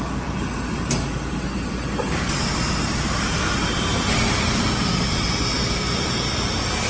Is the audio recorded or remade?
remade